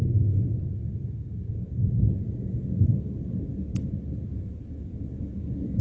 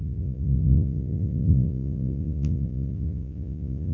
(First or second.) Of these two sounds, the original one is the first